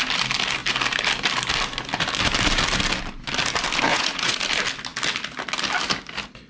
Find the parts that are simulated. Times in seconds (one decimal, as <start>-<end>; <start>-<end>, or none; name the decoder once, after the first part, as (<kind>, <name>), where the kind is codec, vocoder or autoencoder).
3.9-4.4 (vocoder, Vocos)